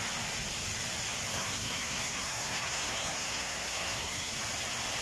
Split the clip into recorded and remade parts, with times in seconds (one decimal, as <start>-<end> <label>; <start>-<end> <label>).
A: 0.0-1.3 recorded; 1.3-4.3 remade; 4.3-5.0 recorded